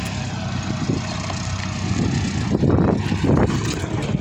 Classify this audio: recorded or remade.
recorded